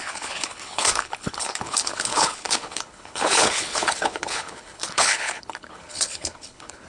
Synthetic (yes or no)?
yes